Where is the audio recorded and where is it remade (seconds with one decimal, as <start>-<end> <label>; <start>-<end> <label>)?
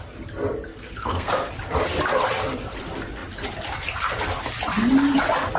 0.0-0.7 recorded; 0.7-1.5 remade; 1.5-5.6 recorded